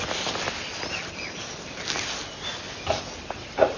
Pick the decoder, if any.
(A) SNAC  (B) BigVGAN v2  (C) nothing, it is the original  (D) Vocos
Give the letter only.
C